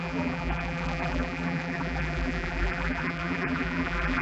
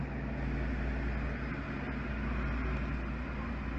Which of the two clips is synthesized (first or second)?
first